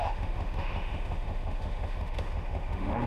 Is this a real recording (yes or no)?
no